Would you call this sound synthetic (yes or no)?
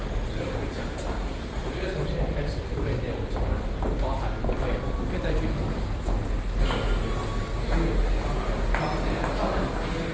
no